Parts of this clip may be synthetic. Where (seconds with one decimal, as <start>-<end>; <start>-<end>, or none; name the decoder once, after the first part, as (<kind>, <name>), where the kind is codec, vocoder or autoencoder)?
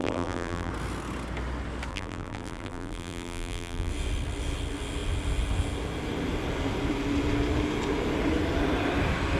0.0-0.7 (vocoder, BigVGAN v2); 1.9-3.9